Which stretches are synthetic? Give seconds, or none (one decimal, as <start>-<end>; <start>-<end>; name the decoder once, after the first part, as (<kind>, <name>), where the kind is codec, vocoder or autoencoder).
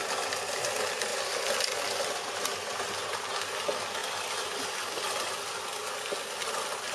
none